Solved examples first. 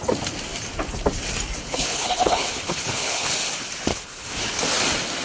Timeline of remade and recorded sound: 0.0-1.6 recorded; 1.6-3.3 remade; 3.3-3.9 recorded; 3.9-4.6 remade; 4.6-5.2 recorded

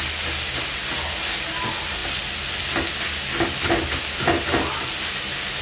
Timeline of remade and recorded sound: 0.0-5.6 recorded

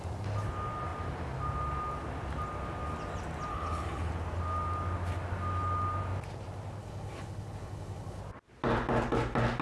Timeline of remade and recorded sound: 0.0-3.5 recorded; 3.5-4.1 remade; 4.1-6.8 recorded; 6.8-8.2 remade; 8.2-9.6 recorded

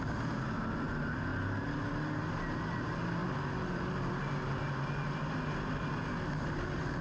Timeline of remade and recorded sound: 0.0-7.0 recorded

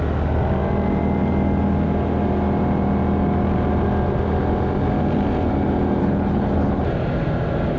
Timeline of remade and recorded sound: 0.0-6.0 recorded; 6.0-6.8 remade; 6.8-7.8 recorded

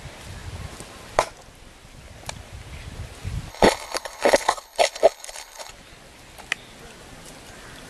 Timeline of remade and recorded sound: 0.0-3.5 recorded; 3.5-5.7 remade; 5.7-7.9 recorded

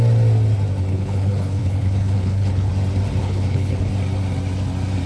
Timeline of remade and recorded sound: 0.0-0.9 recorded; 0.9-2.7 remade; 2.7-3.2 recorded; 3.2-3.9 remade; 3.9-5.1 recorded